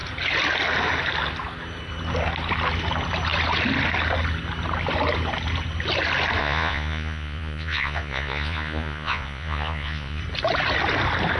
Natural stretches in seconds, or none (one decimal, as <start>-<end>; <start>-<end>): 0.0-6.4; 10.2-11.4